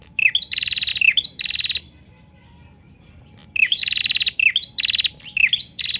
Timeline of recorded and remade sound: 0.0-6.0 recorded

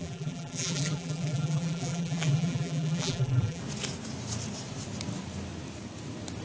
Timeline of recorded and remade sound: 0.0-3.6 remade; 3.6-6.4 recorded

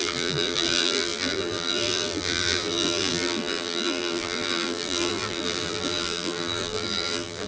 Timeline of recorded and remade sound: 0.0-7.5 remade

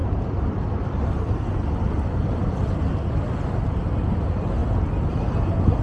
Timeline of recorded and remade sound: 0.0-4.6 recorded; 4.6-5.3 remade; 5.3-5.8 recorded

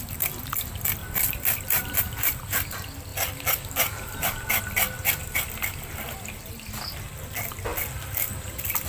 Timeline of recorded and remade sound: 0.0-1.0 recorded; 1.0-2.0 remade; 2.0-8.9 recorded